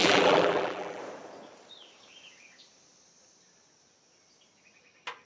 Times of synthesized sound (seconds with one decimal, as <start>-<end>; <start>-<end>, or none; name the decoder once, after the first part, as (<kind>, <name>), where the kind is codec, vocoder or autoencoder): 0.0-1.0 (vocoder, BigVGAN v2)